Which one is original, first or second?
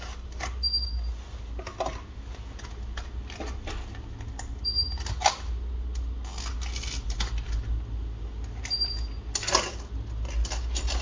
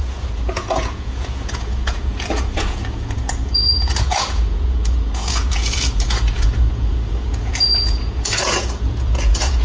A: first